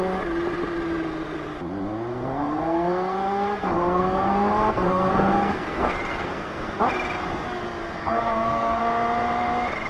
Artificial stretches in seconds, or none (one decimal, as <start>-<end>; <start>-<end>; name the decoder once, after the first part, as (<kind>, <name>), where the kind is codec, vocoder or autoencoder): 2.1-6.8 (codec, SNAC); 8.0-8.8